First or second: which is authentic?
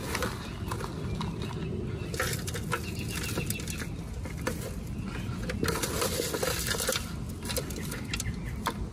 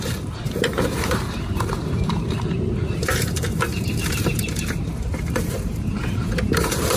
first